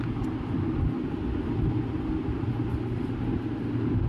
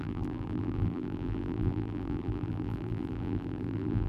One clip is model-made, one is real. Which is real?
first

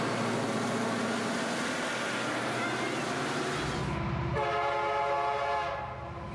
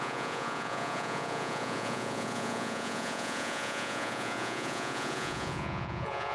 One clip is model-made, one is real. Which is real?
first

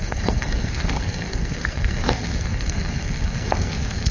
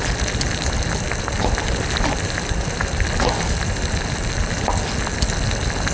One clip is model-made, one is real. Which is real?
second